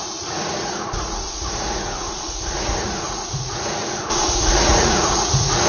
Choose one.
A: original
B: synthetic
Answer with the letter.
B